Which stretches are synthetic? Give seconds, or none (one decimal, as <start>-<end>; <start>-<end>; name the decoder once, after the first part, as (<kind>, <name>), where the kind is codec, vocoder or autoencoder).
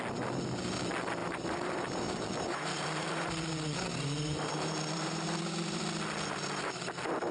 1.2-3.1 (vocoder, BigVGAN v2); 3.9-5.8